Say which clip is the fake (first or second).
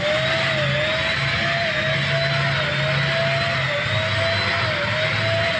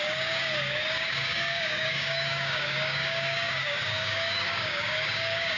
second